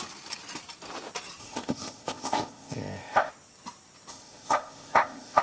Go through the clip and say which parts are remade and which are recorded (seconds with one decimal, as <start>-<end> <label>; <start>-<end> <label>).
0.0-1.4 recorded; 1.4-3.3 remade; 3.3-4.1 recorded; 4.1-5.4 remade

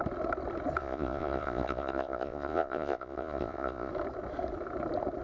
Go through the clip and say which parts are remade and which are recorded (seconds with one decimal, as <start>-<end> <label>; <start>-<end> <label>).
0.0-0.8 recorded; 0.8-3.9 remade; 3.9-5.2 recorded

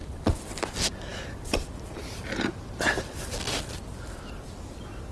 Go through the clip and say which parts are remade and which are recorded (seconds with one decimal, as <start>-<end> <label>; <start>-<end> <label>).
0.0-5.1 recorded